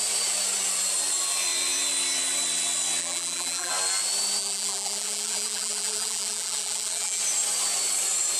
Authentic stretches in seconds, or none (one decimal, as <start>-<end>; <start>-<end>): 0.0-3.0; 3.7-4.4; 7.2-8.4